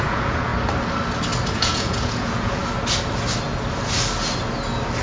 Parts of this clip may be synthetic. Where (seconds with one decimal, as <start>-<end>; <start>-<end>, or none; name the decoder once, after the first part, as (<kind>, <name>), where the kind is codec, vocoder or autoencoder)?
0.0-0.5 (vocoder, Vocos); 1.5-2.6